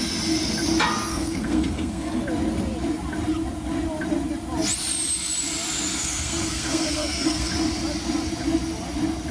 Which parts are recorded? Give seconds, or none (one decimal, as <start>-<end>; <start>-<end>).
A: 0.0-1.1; 2.2-5.9; 7.5-9.3